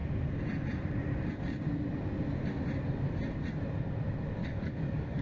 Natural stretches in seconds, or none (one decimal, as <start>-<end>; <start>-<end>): 0.0-4.4

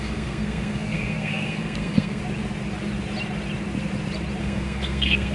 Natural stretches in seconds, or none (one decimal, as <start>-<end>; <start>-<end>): 2.2-4.4

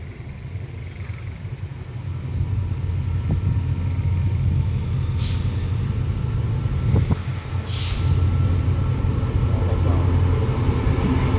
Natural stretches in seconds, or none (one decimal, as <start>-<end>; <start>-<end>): 0.0-11.4

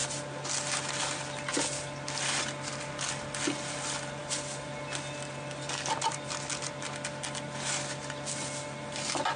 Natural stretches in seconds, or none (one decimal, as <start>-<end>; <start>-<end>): 0.0-9.4

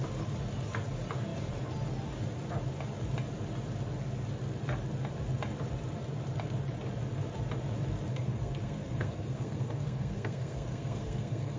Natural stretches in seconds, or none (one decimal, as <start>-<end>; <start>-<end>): 0.0-8.1

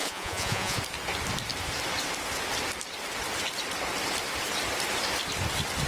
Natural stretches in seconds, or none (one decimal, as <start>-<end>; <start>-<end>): 0.8-5.9

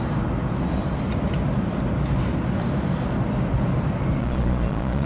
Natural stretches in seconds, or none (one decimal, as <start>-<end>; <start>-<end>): 0.0-4.2

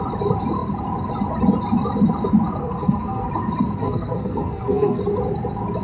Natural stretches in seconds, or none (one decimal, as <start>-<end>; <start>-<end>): 0.0-2.6; 3.3-3.8; 5.0-5.8